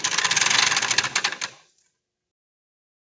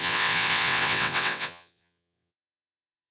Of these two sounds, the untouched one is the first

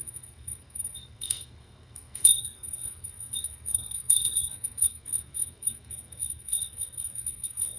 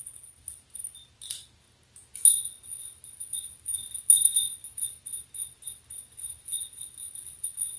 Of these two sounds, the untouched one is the second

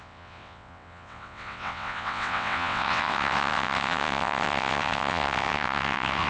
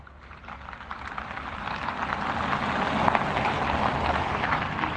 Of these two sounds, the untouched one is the second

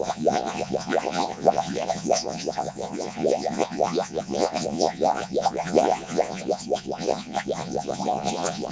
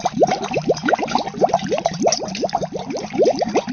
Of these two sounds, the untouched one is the second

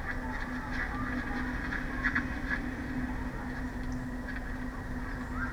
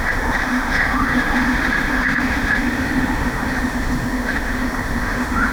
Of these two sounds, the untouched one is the first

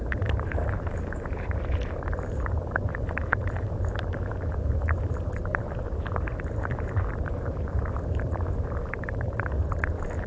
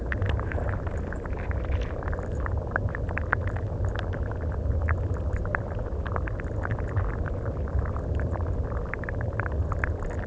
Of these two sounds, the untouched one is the second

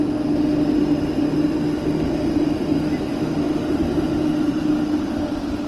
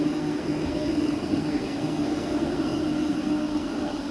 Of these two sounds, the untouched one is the first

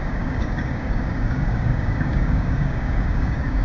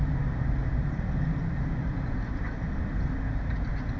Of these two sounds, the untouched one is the second